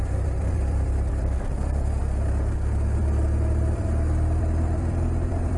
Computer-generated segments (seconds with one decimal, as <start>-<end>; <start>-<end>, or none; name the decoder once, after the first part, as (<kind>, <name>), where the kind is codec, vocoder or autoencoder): 0.0-2.0 (vocoder, BigVGAN v2); 3.0-5.6